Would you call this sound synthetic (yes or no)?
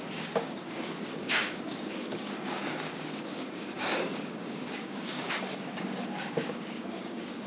yes